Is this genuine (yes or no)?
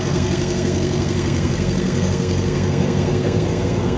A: no